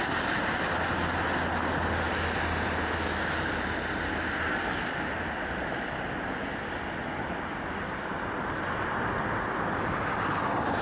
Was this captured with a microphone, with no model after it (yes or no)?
yes